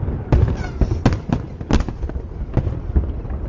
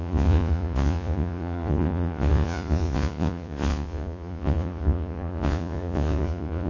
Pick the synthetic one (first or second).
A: second